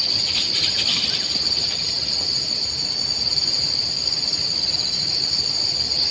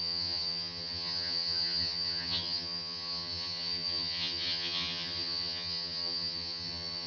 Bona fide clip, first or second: first